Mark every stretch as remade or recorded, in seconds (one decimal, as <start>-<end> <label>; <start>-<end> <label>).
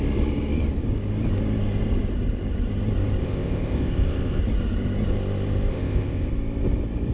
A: 0.0-3.2 recorded; 3.2-4.4 remade; 4.4-5.7 recorded; 5.7-6.3 remade; 6.3-7.1 recorded